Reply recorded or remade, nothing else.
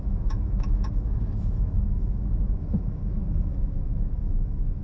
remade